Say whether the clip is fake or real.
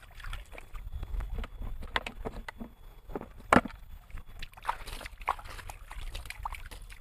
real